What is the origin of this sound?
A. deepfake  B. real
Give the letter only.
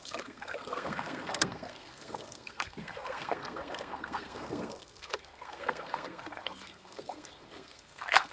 A